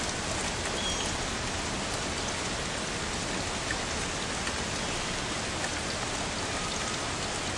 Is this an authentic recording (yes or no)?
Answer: yes